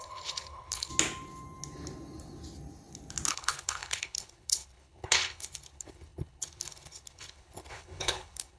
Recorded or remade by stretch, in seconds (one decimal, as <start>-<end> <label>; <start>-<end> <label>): 0.0-0.9 remade; 0.9-3.3 recorded; 3.3-8.6 remade